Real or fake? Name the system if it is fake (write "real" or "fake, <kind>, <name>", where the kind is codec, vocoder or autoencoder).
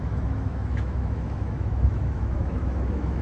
fake, autoencoder, DAC-VAE